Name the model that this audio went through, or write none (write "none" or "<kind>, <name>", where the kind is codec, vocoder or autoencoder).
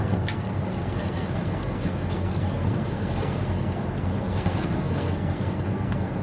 codec, SNAC